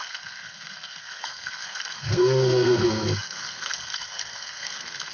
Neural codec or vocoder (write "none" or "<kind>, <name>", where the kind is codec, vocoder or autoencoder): codec, SNAC